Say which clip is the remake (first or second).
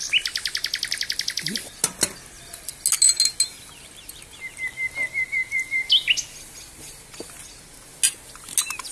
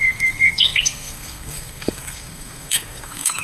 second